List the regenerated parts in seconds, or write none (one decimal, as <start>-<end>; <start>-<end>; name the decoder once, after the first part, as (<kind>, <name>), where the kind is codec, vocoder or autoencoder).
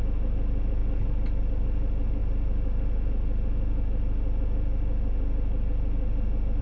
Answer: none